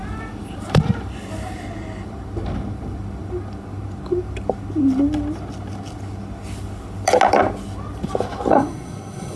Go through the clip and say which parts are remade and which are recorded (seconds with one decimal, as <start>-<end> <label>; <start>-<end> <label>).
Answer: 0.0-8.5 recorded; 8.5-9.4 remade